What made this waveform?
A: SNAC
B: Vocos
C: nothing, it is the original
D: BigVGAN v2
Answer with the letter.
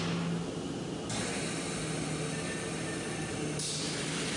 C